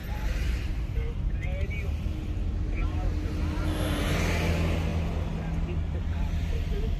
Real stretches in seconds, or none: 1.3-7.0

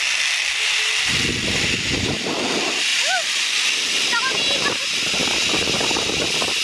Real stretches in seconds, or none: 0.0-6.6

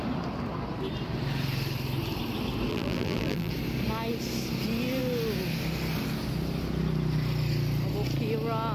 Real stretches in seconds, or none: 0.0-2.7; 3.5-8.7

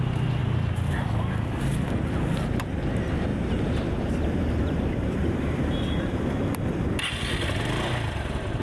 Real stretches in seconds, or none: 0.0-3.3; 6.4-8.6

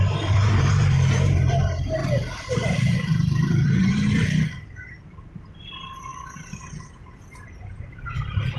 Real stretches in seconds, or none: none

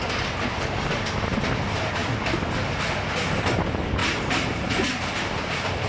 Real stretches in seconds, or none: 0.0-4.0; 5.4-5.9

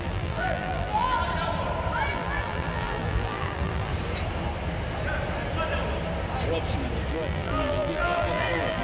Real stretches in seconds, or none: 1.2-2.1; 3.9-7.1

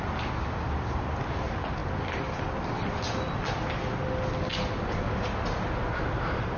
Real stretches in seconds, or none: 0.0-6.6